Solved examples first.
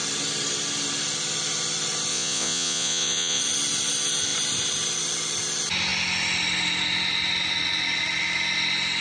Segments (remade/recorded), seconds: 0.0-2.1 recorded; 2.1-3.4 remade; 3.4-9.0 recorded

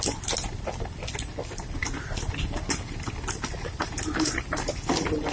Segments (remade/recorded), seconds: 0.0-5.3 recorded

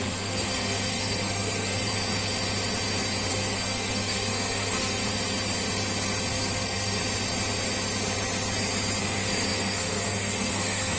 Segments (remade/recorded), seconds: 0.0-1.9 remade; 1.9-3.3 recorded; 3.3-5.0 remade; 5.0-6.3 recorded; 6.3-7.0 remade; 7.0-9.0 recorded; 9.0-11.0 remade

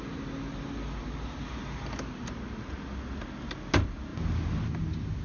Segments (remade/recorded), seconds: 0.0-5.2 recorded

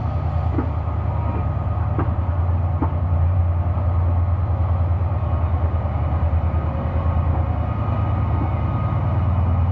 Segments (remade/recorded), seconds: 0.0-2.8 recorded; 2.8-3.4 remade; 3.4-9.7 recorded